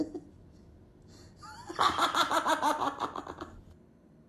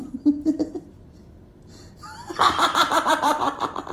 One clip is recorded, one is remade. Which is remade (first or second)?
second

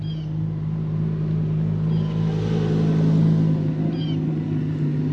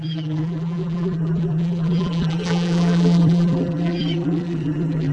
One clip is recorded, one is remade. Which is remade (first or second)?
second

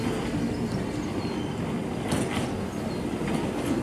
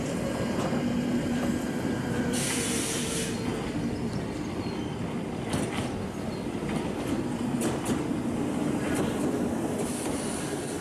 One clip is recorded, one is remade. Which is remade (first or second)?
second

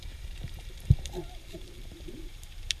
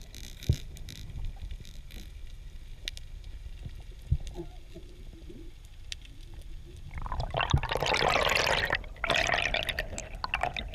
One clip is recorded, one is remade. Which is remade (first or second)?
first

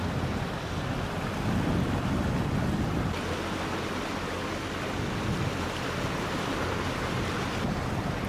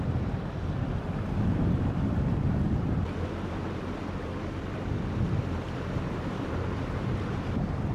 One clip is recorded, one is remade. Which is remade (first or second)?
second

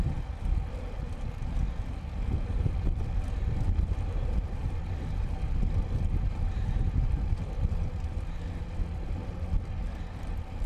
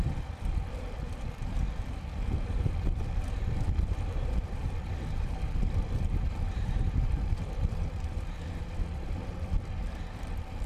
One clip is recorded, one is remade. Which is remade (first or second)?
second